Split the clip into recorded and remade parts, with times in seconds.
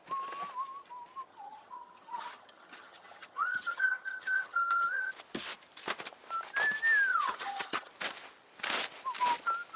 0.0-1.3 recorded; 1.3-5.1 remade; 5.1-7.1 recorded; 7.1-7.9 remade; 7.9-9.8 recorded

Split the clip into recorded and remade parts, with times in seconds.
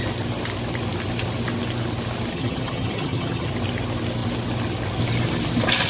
0.0-2.3 recorded; 2.3-3.5 remade; 3.5-5.9 recorded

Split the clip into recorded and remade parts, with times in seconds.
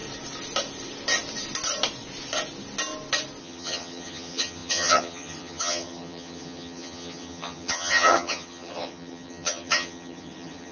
0.0-3.4 recorded; 3.4-10.7 remade